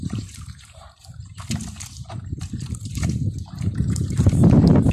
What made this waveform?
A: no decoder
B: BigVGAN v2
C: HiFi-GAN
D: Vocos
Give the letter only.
B